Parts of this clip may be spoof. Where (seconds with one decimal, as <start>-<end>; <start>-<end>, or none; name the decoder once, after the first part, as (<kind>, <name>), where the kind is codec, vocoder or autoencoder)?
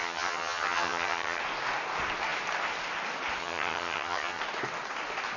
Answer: 0.0-1.4 (vocoder, HiFi-GAN); 3.4-4.4